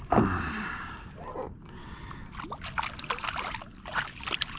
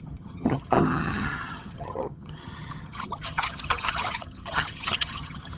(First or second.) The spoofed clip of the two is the second